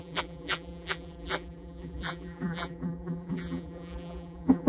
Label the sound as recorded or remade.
remade